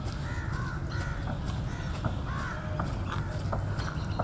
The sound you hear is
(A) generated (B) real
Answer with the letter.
B